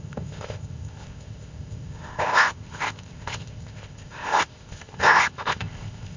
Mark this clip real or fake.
fake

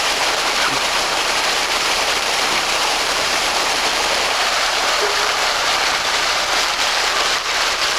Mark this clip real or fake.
fake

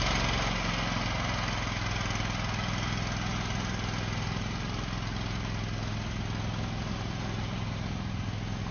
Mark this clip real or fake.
real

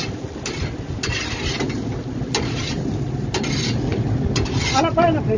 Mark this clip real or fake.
real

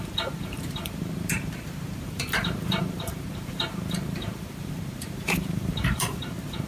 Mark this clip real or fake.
fake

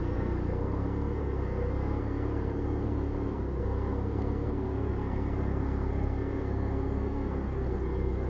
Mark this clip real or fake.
fake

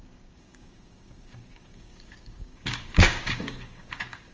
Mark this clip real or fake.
fake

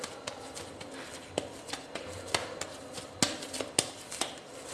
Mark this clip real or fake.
real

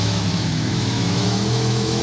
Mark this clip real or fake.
fake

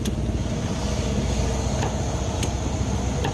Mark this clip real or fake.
real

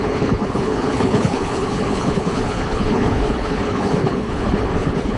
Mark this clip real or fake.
fake